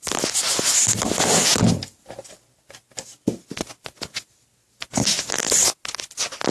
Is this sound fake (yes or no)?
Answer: no